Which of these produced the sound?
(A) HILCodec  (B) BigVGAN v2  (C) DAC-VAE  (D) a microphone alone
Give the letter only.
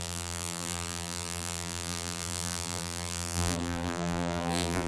B